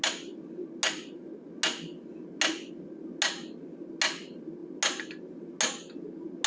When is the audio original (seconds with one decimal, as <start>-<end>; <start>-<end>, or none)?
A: 0.0-6.5